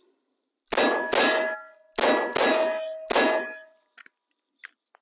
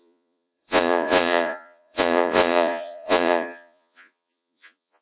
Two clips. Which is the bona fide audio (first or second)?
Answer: first